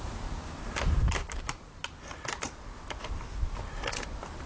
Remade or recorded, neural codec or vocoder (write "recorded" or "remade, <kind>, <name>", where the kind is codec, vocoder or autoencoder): recorded